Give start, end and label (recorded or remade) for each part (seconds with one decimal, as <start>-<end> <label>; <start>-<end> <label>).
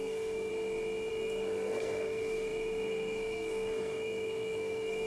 0.0-0.5 remade; 0.5-1.1 recorded; 1.1-5.1 remade